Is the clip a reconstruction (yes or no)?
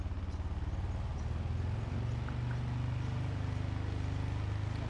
no